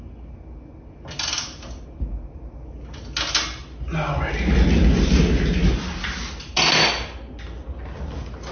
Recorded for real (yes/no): yes